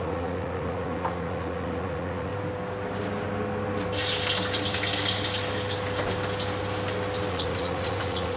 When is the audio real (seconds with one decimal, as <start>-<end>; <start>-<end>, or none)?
2.3-7.3